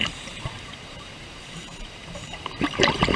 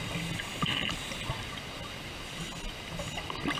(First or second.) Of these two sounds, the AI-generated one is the first